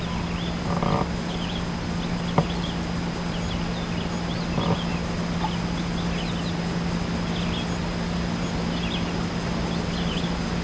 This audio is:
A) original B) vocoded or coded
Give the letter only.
A